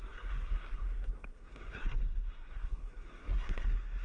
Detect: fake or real fake